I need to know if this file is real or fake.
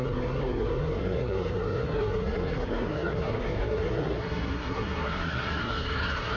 fake